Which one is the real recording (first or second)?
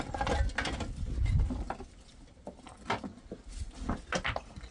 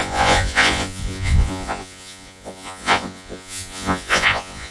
first